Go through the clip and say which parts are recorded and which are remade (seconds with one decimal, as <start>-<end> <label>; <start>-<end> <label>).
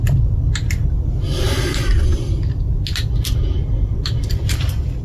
0.0-5.0 recorded